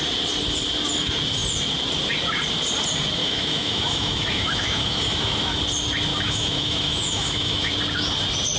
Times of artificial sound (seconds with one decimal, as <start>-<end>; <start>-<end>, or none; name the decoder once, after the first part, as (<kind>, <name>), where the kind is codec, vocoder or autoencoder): 3.2-5.6 (autoencoder, DAC-VAE); 6.1-7.7